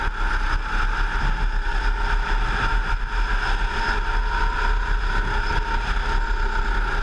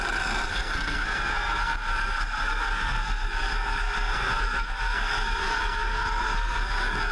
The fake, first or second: second